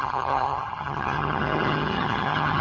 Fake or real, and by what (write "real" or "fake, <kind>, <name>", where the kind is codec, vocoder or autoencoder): fake, vocoder, HiFi-GAN